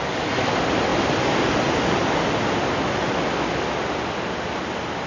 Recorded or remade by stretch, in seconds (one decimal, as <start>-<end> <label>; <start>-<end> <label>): 0.0-5.1 recorded

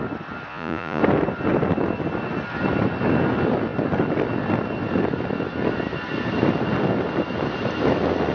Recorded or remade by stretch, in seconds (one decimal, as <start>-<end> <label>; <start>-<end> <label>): 0.0-0.5 recorded; 0.5-1.0 remade; 1.0-8.3 recorded

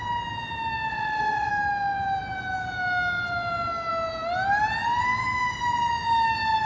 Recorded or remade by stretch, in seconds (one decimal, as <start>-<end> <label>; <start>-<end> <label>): 0.0-0.9 recorded; 0.9-1.5 remade; 1.5-6.7 recorded